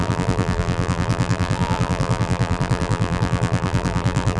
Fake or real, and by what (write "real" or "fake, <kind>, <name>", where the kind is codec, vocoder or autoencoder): fake, vocoder, BigVGAN v2